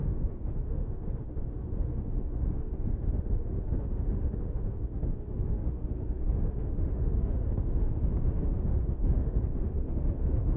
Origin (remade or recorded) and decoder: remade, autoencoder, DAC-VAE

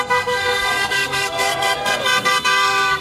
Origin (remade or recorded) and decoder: remade, codec, SNAC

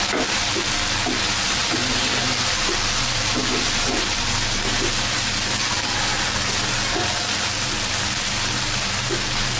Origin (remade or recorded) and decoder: recorded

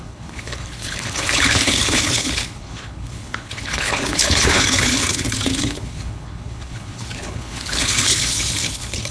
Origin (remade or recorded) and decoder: remade, codec, HILCodec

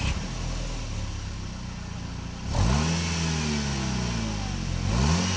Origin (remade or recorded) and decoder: recorded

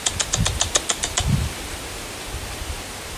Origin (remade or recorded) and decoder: remade, vocoder, BigVGAN v2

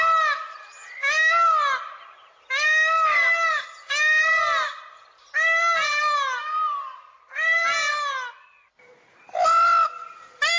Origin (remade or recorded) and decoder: recorded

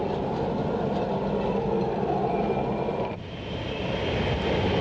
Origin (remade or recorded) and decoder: recorded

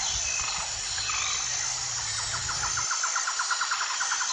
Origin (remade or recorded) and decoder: recorded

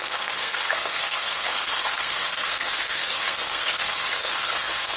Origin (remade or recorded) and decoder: remade, codec, SNAC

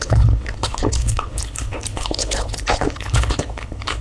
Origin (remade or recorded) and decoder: remade, codec, HILCodec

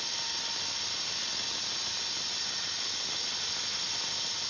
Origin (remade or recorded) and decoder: recorded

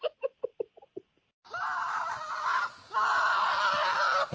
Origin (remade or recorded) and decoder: recorded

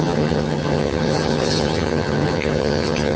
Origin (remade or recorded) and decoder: remade, vocoder, HiFi-GAN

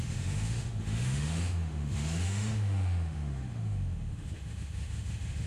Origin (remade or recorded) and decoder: remade, autoencoder, DAC-VAE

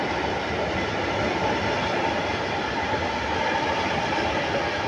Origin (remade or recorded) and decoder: recorded